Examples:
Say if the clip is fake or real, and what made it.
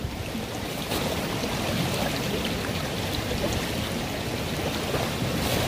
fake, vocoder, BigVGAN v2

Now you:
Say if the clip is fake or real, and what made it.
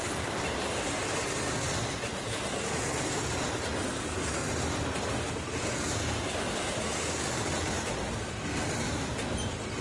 real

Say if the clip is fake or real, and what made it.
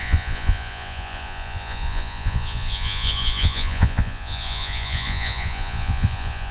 fake, vocoder, Vocos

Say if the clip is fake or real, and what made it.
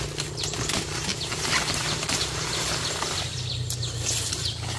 real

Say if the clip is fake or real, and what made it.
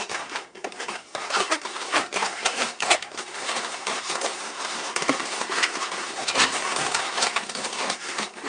fake, codec, SNAC